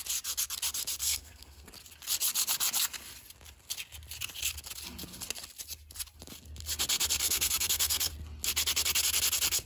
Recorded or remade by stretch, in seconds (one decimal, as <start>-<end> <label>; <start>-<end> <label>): 0.0-1.0 recorded; 1.0-1.7 remade; 1.7-7.2 recorded; 7.2-8.1 remade; 8.1-9.7 recorded